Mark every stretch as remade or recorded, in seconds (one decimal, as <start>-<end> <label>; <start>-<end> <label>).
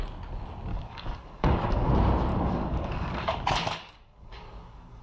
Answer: 0.0-0.7 recorded; 0.7-1.9 remade; 1.9-2.3 recorded; 2.3-5.0 remade